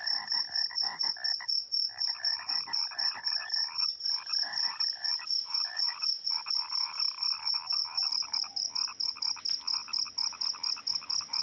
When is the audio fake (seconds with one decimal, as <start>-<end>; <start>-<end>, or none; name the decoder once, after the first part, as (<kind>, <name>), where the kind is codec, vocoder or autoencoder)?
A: 1.8-6.5 (vocoder, BigVGAN v2); 7.8-8.7